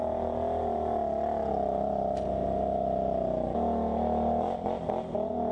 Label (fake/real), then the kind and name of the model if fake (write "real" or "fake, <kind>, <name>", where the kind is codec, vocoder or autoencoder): real